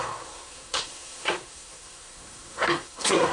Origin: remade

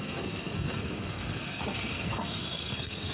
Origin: remade